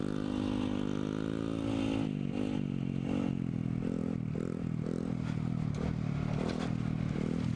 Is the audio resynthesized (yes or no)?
no